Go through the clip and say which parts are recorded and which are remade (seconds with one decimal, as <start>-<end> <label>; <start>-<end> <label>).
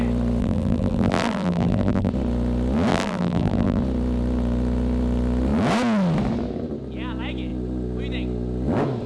0.0-0.4 recorded; 0.4-2.1 remade; 2.1-2.9 recorded; 2.9-3.8 remade; 3.8-9.1 recorded